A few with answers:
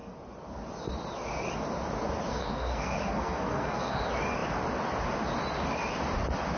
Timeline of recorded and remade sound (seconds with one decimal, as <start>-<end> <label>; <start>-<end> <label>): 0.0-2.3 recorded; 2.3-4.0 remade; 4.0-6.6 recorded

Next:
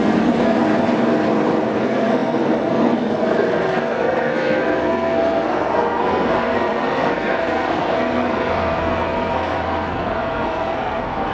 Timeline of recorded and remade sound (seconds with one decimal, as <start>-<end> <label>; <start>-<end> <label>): 0.0-0.6 remade; 0.6-1.8 recorded; 1.8-11.3 remade

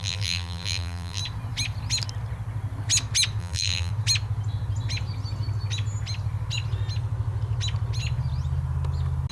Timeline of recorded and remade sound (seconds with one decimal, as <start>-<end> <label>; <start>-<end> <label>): 0.0-1.2 remade; 1.2-3.4 recorded; 3.4-3.9 remade; 3.9-9.3 recorded

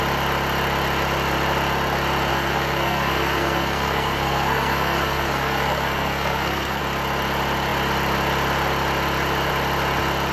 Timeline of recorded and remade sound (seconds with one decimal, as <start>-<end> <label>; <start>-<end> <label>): 0.0-2.3 recorded; 2.3-6.8 remade; 6.8-10.3 recorded